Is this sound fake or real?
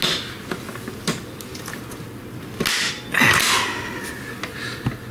real